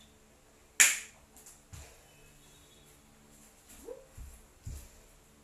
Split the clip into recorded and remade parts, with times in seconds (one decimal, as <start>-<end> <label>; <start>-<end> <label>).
0.0-5.4 recorded